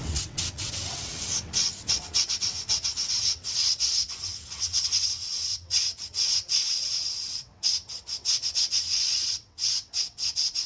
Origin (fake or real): fake